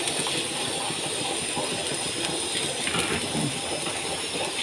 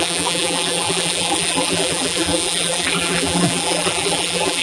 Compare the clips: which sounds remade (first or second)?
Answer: second